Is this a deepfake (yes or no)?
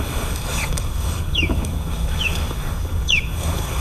yes